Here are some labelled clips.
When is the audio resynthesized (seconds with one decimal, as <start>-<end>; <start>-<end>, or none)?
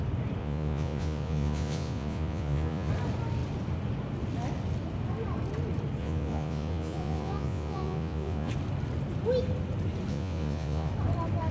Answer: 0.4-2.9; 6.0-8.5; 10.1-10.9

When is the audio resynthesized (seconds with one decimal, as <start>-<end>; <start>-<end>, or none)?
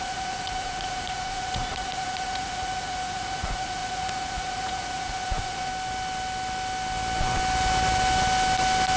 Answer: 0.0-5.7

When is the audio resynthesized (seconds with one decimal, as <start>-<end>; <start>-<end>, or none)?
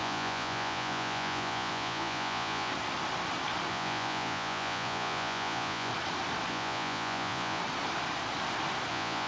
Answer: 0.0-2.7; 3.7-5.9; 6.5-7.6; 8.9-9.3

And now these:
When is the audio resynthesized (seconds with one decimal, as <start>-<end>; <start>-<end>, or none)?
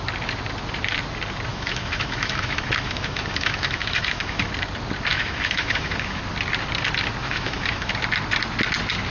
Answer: 1.5-4.5; 5.1-6.2; 7.2-7.9